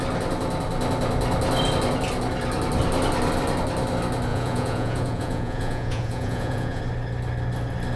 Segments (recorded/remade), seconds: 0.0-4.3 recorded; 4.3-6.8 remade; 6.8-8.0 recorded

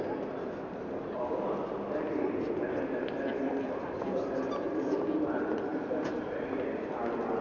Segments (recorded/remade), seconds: 0.0-7.4 recorded

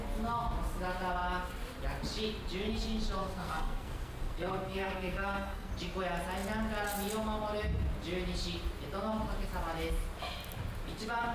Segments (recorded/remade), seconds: 0.0-3.2 recorded; 3.2-5.7 remade; 5.7-11.3 recorded

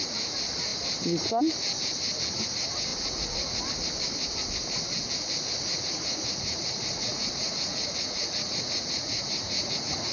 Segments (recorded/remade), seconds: 0.0-2.9 recorded; 2.9-3.6 remade; 3.6-5.7 recorded; 5.7-10.1 remade

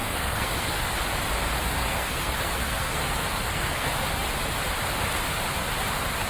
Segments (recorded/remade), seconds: 0.0-1.0 remade; 1.0-1.6 recorded; 1.6-3.9 remade; 3.9-6.3 recorded

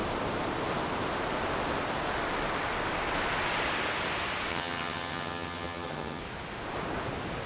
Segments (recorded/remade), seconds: 0.0-4.5 recorded; 4.5-6.2 remade; 6.2-7.5 recorded

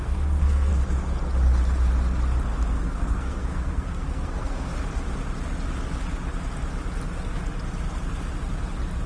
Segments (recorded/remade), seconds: 0.0-0.7 remade; 0.7-2.7 recorded; 2.7-4.7 remade; 4.7-9.1 recorded